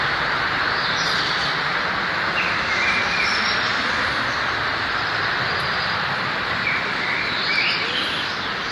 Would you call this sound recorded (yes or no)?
yes